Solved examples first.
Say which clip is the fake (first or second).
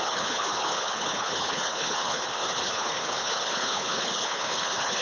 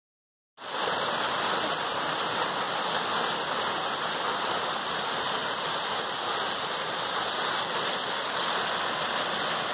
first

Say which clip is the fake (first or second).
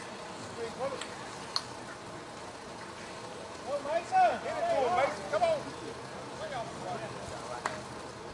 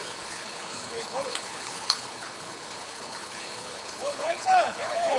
second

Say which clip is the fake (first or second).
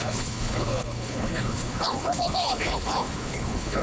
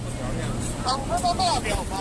first